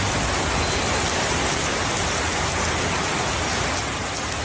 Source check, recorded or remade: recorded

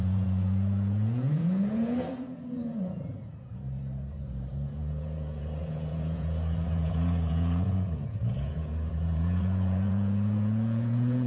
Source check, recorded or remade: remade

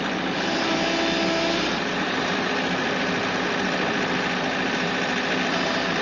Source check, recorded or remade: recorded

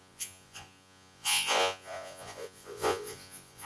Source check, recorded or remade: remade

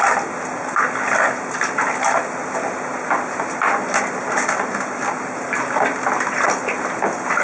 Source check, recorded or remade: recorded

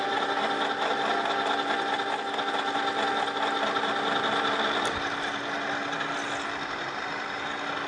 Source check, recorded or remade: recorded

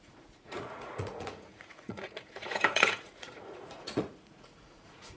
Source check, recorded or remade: remade